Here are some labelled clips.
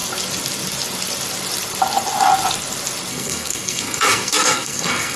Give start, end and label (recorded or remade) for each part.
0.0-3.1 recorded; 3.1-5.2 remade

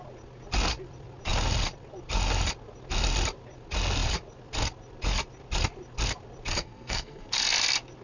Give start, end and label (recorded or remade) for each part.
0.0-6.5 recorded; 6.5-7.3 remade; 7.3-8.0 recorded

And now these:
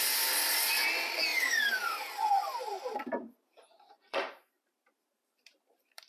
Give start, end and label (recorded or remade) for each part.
0.0-1.3 recorded; 1.3-2.1 remade; 2.1-2.7 recorded; 2.7-6.1 remade

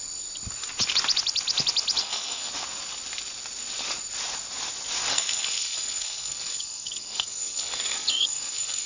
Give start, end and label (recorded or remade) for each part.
0.0-2.0 recorded; 2.0-2.5 remade; 2.5-5.1 recorded; 5.1-8.9 remade